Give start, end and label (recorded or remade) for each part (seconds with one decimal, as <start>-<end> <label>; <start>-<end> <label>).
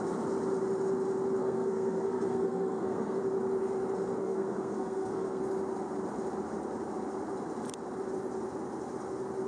0.0-1.4 recorded; 1.4-3.2 remade; 3.2-4.2 recorded; 4.2-5.4 remade; 5.4-9.5 recorded